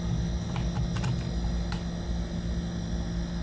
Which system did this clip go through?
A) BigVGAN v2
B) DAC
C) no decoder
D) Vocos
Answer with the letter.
C